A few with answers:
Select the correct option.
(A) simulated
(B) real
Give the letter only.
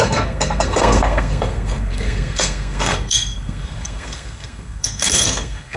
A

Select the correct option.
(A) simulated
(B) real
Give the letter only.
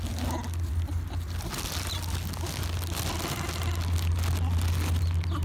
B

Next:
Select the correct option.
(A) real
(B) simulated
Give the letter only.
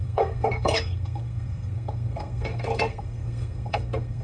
B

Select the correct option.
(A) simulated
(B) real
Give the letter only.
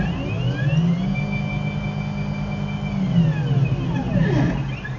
B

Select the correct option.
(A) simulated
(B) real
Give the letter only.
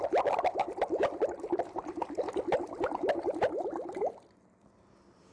B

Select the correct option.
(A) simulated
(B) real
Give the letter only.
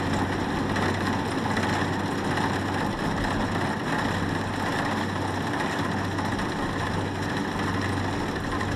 B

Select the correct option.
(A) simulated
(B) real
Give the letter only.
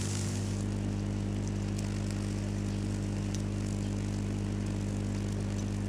B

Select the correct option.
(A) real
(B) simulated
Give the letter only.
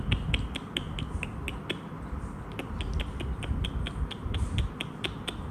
A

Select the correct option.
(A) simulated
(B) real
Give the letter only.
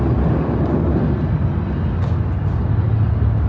B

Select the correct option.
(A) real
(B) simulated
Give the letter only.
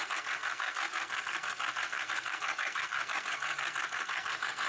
B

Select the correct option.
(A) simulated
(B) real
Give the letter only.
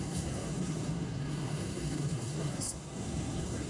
A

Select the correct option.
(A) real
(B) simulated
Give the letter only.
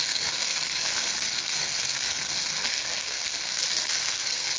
B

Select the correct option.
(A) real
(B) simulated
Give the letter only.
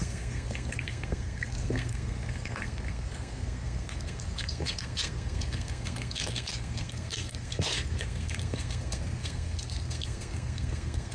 B